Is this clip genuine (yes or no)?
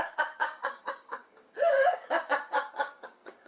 no